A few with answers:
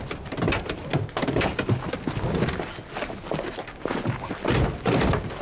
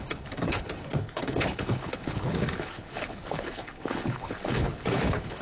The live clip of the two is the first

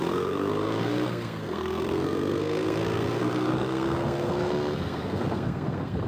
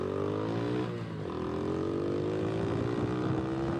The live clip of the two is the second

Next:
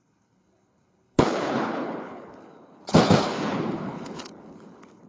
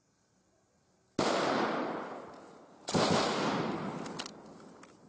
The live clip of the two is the second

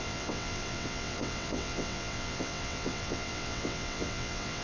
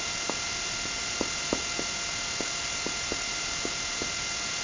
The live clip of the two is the second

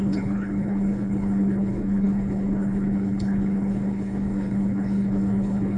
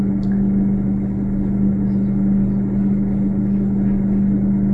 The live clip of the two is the second